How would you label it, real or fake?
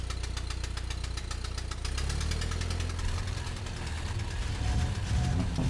real